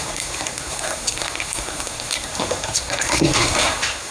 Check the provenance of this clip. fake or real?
fake